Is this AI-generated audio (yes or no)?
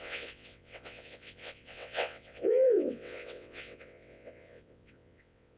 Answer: yes